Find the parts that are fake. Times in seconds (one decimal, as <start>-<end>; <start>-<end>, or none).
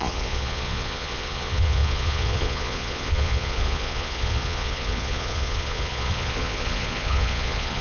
0.0-7.8